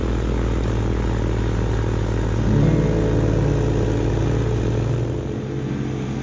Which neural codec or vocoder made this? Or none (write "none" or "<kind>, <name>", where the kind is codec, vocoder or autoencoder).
none